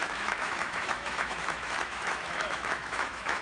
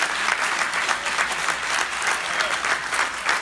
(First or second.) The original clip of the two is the second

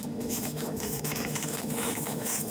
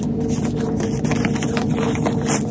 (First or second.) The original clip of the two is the second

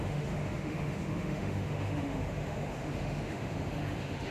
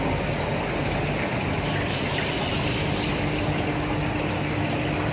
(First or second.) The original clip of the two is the second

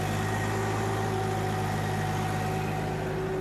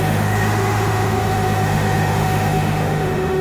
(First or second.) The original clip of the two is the first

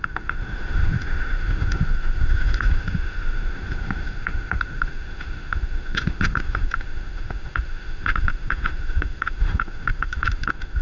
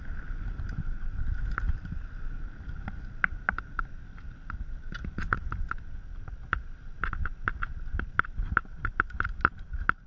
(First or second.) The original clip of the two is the second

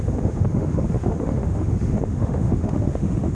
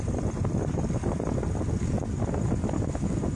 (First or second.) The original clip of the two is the second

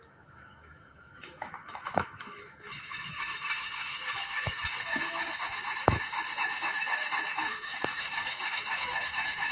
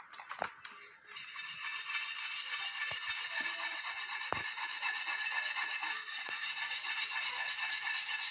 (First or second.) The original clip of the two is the second